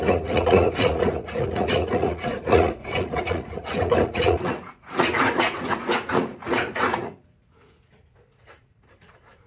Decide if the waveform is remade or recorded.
remade